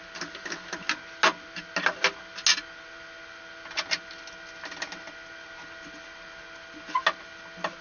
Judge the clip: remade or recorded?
recorded